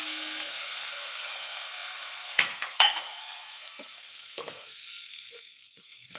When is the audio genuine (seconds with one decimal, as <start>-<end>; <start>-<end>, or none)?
none